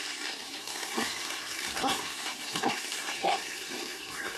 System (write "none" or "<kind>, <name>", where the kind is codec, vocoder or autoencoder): codec, SNAC